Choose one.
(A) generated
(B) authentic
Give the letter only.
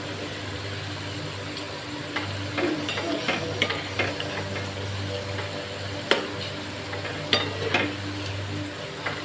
B